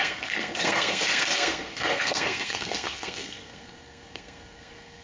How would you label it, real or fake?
fake